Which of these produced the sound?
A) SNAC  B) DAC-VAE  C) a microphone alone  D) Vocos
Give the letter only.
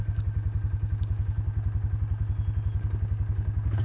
C